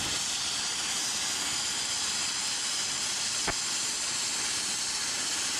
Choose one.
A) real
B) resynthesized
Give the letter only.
A